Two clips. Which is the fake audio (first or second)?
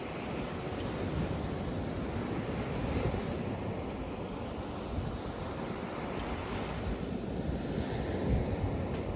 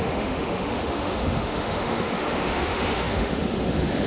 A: second